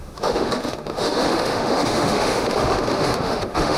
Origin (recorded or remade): remade